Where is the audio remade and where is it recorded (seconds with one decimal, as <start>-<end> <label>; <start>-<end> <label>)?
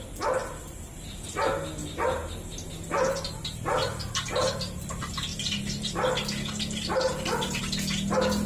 0.0-8.5 recorded